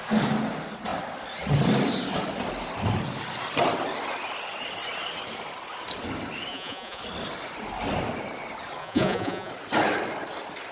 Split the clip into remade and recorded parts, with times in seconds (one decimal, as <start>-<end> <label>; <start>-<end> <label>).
0.0-6.5 recorded; 6.5-7.0 remade; 7.0-8.8 recorded; 8.8-9.5 remade; 9.5-10.7 recorded